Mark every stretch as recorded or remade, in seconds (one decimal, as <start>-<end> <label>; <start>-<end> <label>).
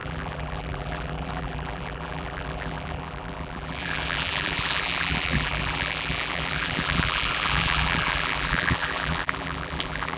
0.0-10.2 remade